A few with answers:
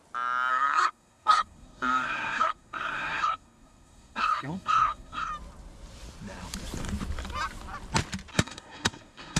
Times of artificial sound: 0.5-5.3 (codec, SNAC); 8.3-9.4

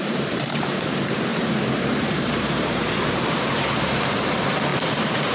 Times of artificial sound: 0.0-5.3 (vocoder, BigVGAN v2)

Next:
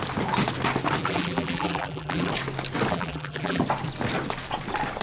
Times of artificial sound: 1.0-2.3 (vocoder, BigVGAN v2); 2.9-3.6